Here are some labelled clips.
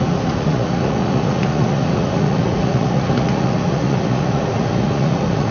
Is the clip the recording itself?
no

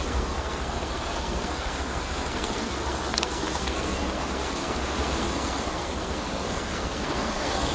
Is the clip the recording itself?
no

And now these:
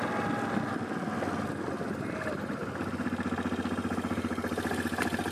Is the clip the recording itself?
yes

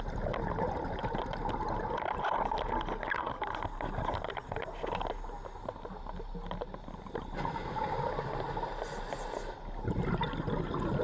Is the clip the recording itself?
yes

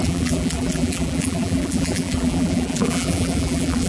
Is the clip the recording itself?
no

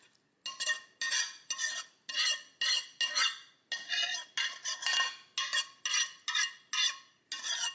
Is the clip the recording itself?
yes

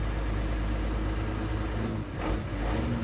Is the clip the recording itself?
yes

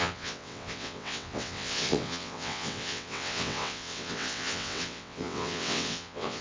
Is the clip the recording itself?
no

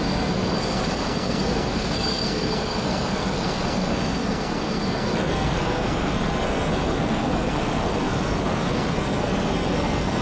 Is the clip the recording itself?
no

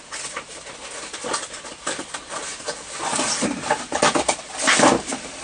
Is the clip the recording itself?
yes